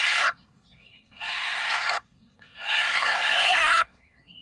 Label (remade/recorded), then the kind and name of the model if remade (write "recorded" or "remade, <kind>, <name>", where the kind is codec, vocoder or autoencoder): remade, codec, SNAC